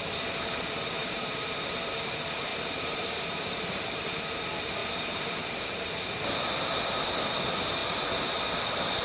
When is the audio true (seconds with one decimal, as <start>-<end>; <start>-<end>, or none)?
0.0-1.0; 1.8-2.5; 4.0-4.8; 5.4-9.0